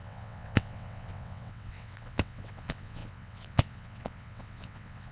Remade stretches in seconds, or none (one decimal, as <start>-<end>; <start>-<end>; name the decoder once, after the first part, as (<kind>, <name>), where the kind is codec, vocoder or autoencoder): 0.0-5.1 (vocoder, WaveNeXt)